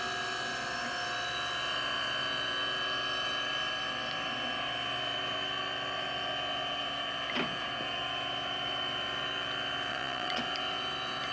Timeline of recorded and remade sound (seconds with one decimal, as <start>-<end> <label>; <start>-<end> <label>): 0.0-9.9 recorded; 9.9-10.4 remade; 10.4-11.3 recorded